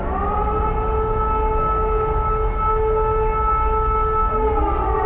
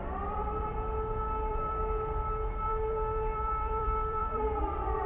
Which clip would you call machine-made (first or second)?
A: second